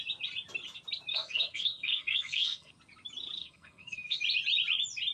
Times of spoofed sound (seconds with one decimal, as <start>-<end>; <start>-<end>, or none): 1.1-2.7; 3.4-4.2